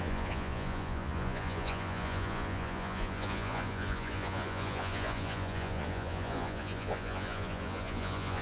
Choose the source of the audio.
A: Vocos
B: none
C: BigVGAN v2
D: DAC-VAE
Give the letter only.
A